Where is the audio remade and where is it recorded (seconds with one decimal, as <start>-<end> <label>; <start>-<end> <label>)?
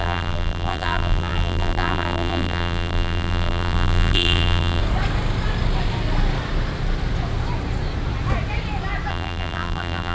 0.0-4.8 remade; 4.8-9.1 recorded; 9.1-10.1 remade